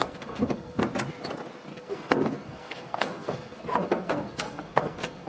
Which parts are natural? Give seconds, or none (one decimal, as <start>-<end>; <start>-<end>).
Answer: 0.8-1.7